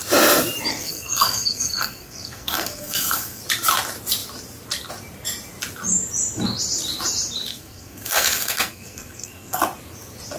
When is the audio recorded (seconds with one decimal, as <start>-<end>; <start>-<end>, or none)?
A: 0.0-0.7; 3.4-7.5; 9.6-10.4